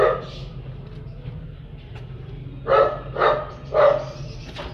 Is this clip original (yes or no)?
yes